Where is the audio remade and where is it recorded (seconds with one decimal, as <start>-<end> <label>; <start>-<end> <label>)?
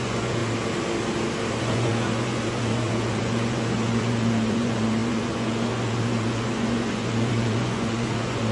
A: 0.0-0.4 remade; 0.4-1.6 recorded; 1.6-8.5 remade